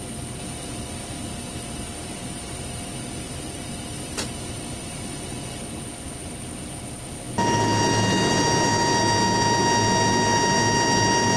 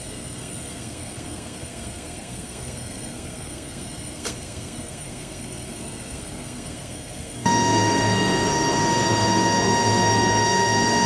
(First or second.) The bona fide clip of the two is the first